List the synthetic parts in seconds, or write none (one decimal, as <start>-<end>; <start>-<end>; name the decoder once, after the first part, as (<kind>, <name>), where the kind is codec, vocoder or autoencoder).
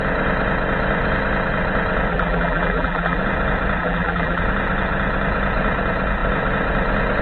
2.1-3.2 (vocoder, BigVGAN v2); 3.8-4.4